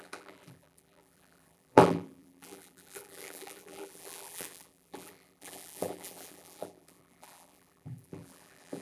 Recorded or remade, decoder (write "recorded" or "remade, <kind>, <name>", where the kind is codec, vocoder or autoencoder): remade, vocoder, BigVGAN v2